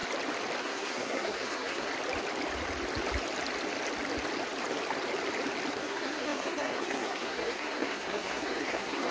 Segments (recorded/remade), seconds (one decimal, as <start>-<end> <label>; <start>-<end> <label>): 0.0-0.6 recorded; 0.6-1.9 remade; 1.9-5.7 recorded; 5.7-9.1 remade